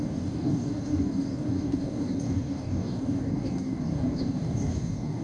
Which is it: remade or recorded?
remade